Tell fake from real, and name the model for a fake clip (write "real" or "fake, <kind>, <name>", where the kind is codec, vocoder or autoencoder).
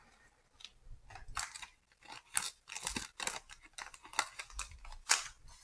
real